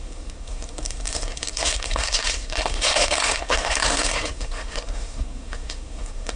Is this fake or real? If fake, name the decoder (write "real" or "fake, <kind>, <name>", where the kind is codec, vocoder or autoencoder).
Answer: fake, codec, SNAC